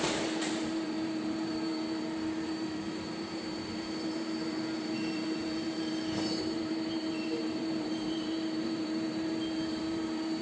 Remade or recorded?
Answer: remade